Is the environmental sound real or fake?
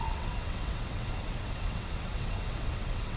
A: fake